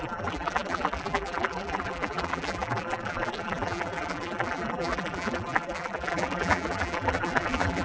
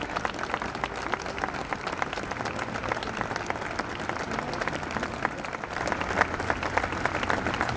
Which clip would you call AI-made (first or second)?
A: first